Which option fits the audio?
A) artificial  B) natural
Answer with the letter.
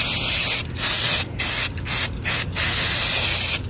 B